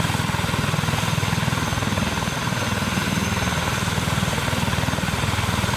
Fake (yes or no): no